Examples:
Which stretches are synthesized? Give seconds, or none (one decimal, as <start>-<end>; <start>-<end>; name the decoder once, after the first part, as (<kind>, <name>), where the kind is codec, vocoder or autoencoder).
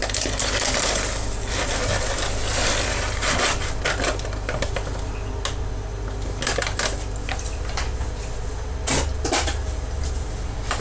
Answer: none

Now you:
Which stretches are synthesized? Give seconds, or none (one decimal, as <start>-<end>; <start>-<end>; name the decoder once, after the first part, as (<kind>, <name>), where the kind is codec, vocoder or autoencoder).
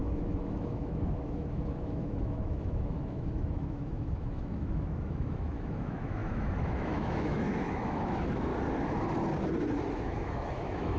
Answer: 0.0-8.5 (autoencoder, DAC-VAE); 9.9-11.0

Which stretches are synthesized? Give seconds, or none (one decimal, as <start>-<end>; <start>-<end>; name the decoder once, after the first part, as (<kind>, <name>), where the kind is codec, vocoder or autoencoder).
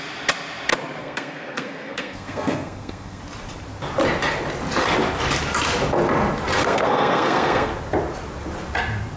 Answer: 1.0-3.2 (codec, SNAC); 6.6-7.7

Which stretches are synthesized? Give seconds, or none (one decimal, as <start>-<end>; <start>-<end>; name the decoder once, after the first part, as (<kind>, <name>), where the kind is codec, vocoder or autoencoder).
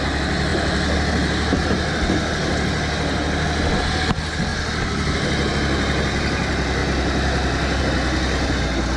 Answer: none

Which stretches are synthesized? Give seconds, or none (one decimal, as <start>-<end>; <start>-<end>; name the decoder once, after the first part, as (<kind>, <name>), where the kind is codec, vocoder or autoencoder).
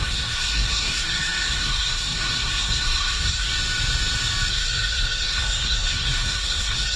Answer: 0.0-3.5 (codec, SNAC); 4.5-7.0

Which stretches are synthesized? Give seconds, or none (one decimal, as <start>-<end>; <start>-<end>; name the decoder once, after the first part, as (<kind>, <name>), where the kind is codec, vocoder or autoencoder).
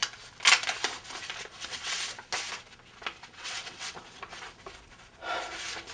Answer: 1.5-2.0 (vocoder, WaveNeXt); 3.3-4.0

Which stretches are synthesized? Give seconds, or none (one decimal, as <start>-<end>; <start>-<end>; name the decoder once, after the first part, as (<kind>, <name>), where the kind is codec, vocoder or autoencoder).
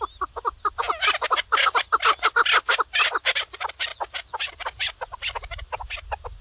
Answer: none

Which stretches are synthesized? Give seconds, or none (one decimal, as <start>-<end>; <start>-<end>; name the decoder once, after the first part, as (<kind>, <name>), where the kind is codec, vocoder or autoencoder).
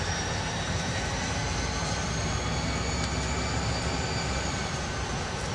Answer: 0.0-1.4 (vocoder, BigVGAN v2); 4.7-5.5